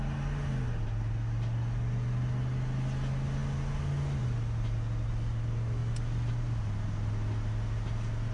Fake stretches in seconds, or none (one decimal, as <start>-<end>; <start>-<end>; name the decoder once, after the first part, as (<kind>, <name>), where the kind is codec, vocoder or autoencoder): none